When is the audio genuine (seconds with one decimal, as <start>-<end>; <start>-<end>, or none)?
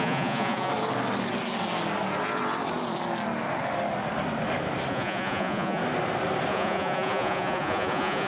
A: 0.7-4.9; 5.8-6.5